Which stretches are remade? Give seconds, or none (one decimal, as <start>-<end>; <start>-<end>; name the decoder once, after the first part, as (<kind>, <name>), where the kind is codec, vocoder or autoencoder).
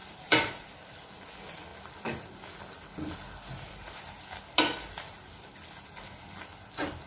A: 0.0-0.8 (vocoder, BigVGAN v2)